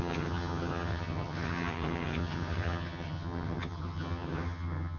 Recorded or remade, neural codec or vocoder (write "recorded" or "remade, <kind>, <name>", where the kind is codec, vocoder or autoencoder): remade, vocoder, HiFi-GAN